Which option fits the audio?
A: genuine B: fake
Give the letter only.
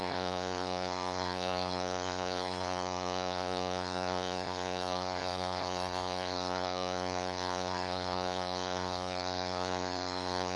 B